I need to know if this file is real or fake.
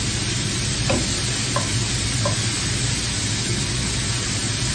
real